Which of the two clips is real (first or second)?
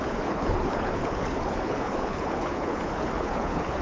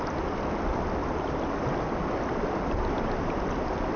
second